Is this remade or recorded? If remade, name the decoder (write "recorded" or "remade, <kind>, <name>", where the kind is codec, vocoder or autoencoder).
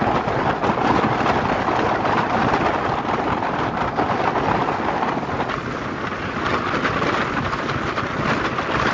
recorded